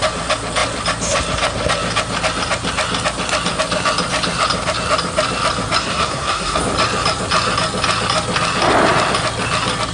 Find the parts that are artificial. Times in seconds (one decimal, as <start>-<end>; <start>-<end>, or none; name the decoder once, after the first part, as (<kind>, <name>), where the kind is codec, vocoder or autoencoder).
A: 5.8-6.6 (codec, SNAC)